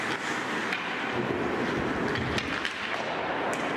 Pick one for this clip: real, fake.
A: real